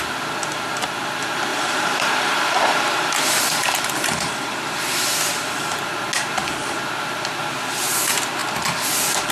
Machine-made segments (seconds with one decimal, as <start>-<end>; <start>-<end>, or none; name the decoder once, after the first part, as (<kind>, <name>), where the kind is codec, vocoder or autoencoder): 1.5-5.8 (vocoder, BigVGAN v2)